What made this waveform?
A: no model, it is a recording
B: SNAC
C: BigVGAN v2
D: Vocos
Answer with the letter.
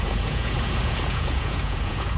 D